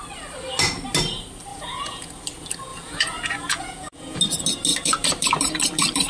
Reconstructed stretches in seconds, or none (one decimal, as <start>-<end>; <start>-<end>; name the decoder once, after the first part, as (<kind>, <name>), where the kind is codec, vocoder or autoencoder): 1.5-2.1 (vocoder, Vocos); 2.7-4.2